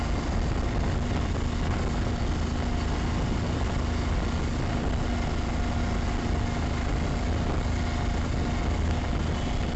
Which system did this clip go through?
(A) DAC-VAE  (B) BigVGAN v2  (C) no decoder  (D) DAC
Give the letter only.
C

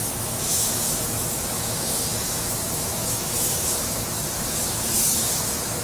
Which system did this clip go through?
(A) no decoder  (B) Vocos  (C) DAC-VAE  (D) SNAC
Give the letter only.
C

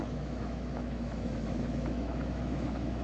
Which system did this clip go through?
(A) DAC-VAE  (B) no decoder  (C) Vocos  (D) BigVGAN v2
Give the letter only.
A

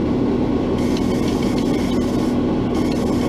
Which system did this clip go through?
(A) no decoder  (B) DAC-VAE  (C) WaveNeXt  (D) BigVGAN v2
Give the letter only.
A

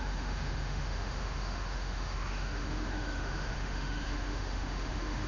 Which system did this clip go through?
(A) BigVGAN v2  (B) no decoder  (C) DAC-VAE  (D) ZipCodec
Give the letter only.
C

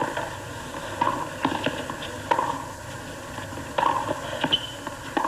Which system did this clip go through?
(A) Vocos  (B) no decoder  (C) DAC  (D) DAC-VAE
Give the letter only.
B